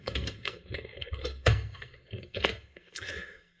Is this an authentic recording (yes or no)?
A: no